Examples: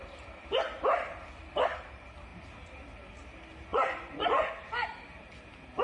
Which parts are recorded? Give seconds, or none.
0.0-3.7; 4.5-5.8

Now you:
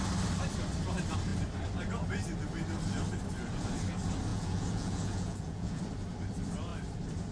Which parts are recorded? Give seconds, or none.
0.0-4.3; 5.8-7.3

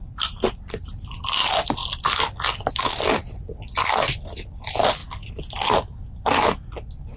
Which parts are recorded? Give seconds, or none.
0.0-7.2

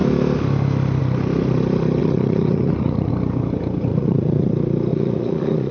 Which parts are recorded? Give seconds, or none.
0.0-2.0; 3.1-3.9; 4.5-4.9

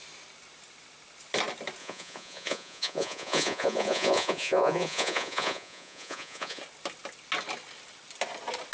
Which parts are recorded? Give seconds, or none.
0.0-1.8; 6.6-8.7

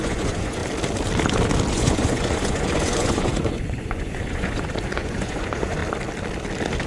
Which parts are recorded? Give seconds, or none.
0.6-1.7; 5.8-6.9

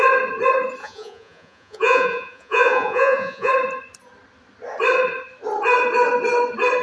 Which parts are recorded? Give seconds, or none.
0.0-0.8; 3.5-6.8

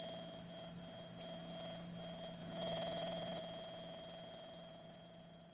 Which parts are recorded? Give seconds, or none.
0.0-2.4; 3.4-4.7